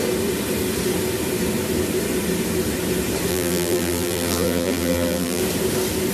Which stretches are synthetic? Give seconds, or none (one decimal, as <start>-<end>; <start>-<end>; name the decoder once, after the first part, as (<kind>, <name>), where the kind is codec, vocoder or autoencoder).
3.3-5.4 (vocoder, BigVGAN v2)